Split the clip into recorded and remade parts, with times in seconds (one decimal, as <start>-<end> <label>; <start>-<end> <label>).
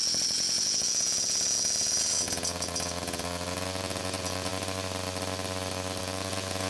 0.0-4.5 remade; 4.5-6.0 recorded; 6.0-6.7 remade